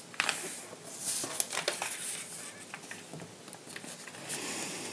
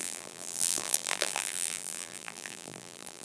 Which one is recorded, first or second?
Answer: first